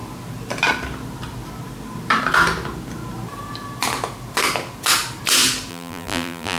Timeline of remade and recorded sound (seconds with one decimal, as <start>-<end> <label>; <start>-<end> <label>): 0.0-5.7 recorded; 5.7-6.6 remade